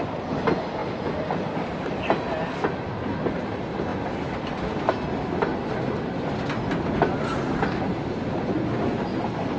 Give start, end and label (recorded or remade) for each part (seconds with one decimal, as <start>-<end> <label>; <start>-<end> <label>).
0.0-9.6 recorded